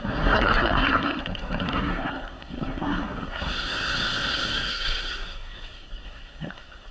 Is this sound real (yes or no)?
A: no